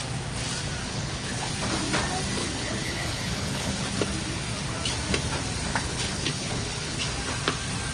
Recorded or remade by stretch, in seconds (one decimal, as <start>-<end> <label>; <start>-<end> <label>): 0.0-0.8 recorded; 0.8-1.5 remade; 1.5-2.4 recorded; 2.4-3.9 remade; 3.9-5.7 recorded; 5.7-7.0 remade; 7.0-7.9 recorded